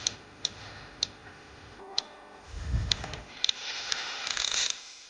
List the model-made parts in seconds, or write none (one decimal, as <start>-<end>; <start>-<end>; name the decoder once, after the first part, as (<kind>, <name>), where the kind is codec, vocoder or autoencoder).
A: 0.0-5.1 (autoencoder, DAC-VAE)